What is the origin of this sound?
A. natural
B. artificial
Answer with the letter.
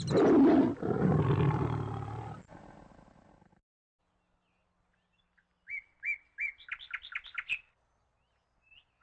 A